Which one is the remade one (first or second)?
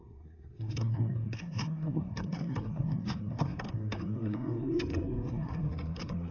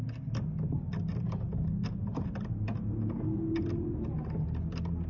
first